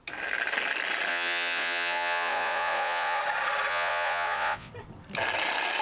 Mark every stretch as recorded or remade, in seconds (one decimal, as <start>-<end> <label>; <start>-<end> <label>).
0.0-1.1 recorded; 1.1-3.2 remade; 3.2-3.7 recorded; 3.7-4.7 remade; 4.7-5.8 recorded